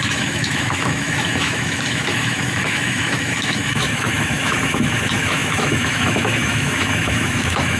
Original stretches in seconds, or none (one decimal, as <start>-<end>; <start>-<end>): none